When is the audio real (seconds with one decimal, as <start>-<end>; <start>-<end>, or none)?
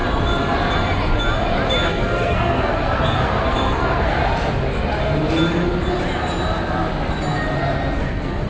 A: 0.0-1.9; 4.2-8.0